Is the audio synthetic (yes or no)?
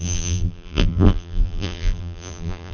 yes